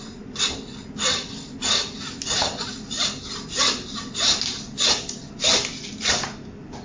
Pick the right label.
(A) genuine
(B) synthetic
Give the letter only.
A